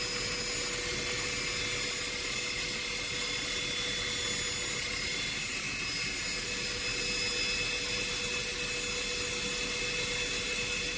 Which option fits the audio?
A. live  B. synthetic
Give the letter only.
A